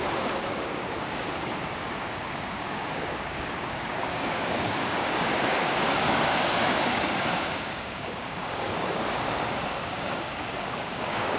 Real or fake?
fake